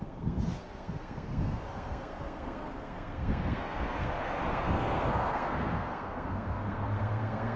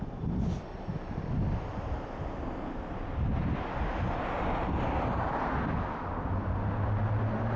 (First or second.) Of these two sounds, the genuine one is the second